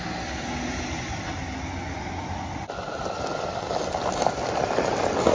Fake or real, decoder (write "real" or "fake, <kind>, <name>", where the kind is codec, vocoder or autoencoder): real